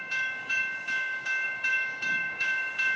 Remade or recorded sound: remade